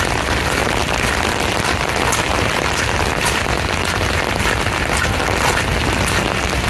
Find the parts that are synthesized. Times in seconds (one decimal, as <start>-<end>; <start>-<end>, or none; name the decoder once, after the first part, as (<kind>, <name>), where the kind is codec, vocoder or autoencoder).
none